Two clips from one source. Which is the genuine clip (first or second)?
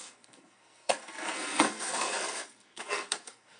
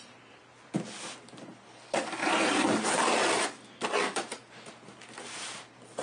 second